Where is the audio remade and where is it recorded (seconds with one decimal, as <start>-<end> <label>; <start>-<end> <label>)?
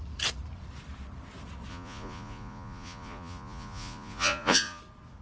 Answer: 0.0-1.7 recorded; 1.7-4.8 remade; 4.8-5.2 recorded